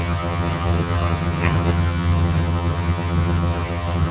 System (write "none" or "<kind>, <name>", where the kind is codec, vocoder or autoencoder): vocoder, HiFi-GAN